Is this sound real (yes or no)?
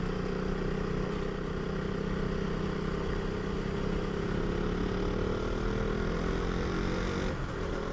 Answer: yes